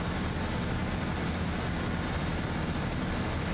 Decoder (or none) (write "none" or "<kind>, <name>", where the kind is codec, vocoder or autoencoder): none